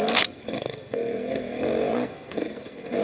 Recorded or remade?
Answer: remade